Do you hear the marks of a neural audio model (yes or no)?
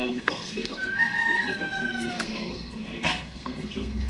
yes